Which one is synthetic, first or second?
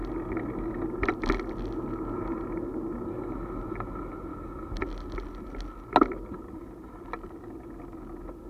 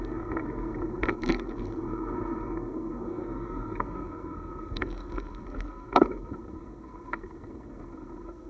second